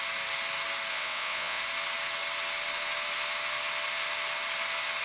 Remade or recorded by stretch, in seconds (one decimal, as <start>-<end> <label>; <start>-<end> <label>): 0.0-0.9 recorded; 0.9-1.6 remade; 1.6-5.0 recorded